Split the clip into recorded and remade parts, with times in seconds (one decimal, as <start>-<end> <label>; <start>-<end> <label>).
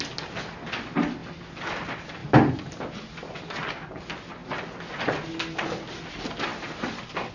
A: 0.0-1.2 recorded; 1.2-1.7 remade; 1.7-2.2 recorded; 2.2-3.3 remade; 3.3-6.5 recorded; 6.5-7.3 remade